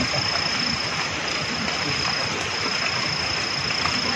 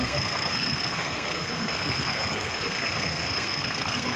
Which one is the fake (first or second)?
second